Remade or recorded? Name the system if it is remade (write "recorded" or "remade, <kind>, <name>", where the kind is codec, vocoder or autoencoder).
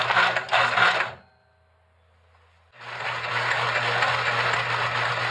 recorded